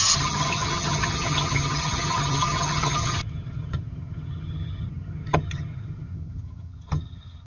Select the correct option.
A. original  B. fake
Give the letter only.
B